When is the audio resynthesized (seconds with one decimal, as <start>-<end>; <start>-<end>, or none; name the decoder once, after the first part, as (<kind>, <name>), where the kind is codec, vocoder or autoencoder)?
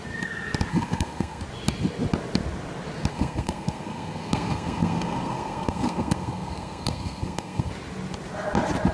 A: 0.7-1.4 (codec, SNAC); 3.1-7.7